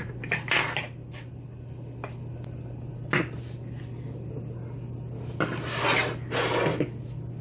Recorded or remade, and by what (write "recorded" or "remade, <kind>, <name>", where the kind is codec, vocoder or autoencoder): recorded